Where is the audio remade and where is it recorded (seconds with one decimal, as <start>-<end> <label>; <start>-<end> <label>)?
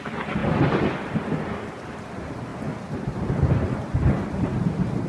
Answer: 0.0-5.1 recorded